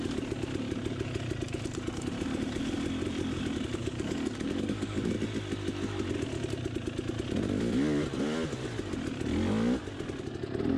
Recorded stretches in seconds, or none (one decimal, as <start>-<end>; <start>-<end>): 0.0-3.8; 5.1-10.8